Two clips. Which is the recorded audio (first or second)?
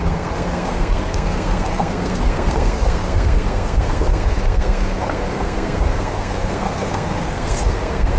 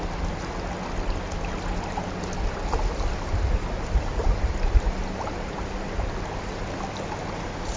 second